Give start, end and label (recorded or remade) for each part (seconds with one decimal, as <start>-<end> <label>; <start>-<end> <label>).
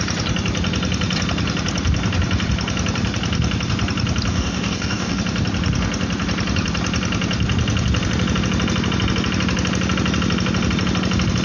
0.0-4.3 recorded; 4.3-5.2 remade; 5.2-11.4 recorded